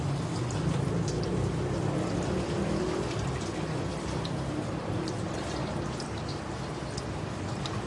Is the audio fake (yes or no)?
no